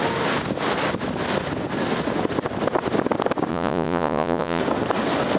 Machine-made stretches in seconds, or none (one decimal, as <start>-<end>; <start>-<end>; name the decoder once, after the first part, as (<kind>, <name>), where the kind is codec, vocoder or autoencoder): 3.5-4.6 (vocoder, Vocos)